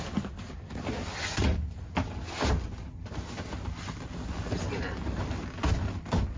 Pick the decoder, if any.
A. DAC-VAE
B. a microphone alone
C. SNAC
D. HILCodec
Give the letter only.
B